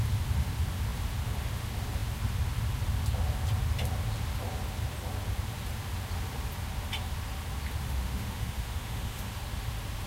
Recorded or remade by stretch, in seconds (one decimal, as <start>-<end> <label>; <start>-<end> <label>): 0.0-7.8 recorded; 7.8-9.4 remade; 9.4-10.1 recorded